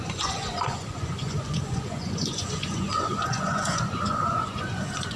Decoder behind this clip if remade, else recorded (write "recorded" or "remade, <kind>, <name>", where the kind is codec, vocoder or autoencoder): remade, vocoder, Vocos